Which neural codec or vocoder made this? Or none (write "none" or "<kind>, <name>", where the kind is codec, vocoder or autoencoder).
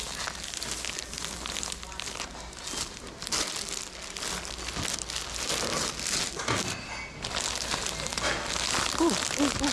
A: none